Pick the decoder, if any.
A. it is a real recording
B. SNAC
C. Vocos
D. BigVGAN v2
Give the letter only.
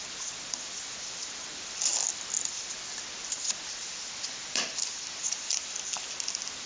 D